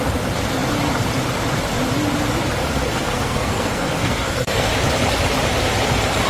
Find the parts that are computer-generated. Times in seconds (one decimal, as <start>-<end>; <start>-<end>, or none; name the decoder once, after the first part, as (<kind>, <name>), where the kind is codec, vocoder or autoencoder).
2.8-4.7 (codec, SNAC)